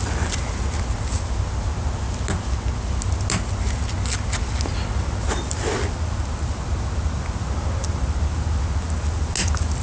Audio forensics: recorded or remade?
recorded